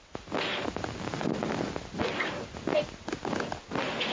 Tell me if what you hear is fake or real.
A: real